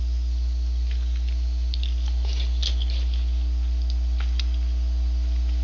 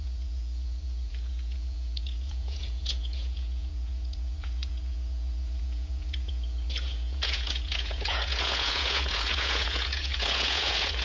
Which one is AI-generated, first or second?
second